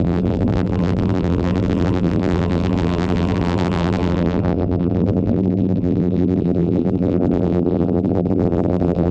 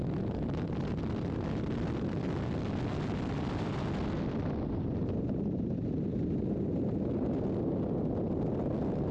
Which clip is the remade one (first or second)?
first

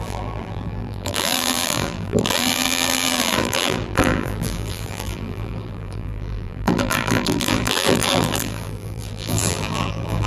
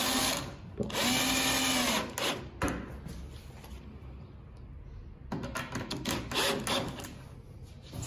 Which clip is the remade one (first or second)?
first